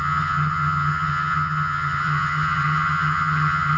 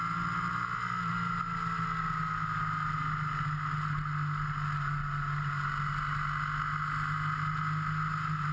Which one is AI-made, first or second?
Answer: first